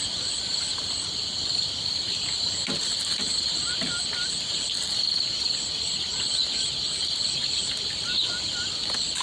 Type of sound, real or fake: real